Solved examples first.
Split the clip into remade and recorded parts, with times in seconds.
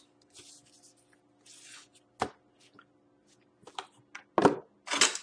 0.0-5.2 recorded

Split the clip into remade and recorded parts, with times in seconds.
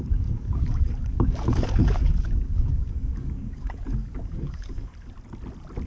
0.0-4.9 remade; 4.9-5.9 recorded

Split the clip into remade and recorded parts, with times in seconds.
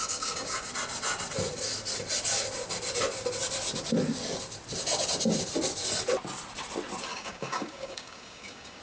0.0-0.7 remade; 0.7-7.1 recorded; 7.1-8.8 remade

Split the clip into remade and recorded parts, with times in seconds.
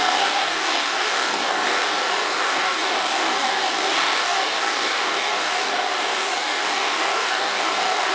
0.0-8.1 remade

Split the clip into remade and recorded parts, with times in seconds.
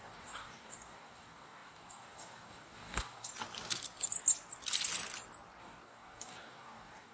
0.0-3.3 remade; 3.3-5.6 recorded; 5.6-7.1 remade